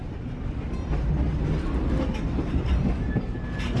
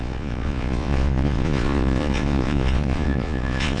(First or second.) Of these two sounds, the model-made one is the second